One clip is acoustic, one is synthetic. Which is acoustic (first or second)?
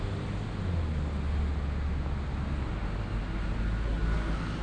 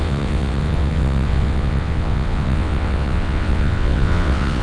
first